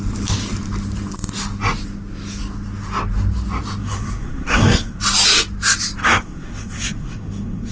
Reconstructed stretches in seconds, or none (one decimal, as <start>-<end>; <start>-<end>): 3.8-5.0; 6.0-7.7

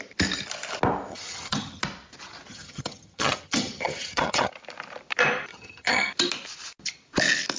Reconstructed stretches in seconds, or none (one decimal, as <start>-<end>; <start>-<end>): 1.1-1.8; 2.5-4.5; 5.5-6.1

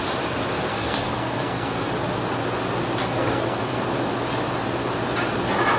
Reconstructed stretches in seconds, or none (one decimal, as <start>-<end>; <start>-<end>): 0.7-1.9; 3.0-3.8

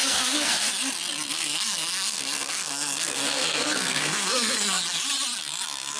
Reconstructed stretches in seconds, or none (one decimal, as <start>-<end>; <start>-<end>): 0.0-0.7; 1.3-4.8